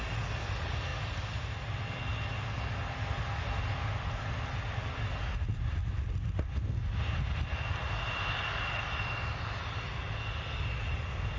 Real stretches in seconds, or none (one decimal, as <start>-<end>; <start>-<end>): 0.0-11.4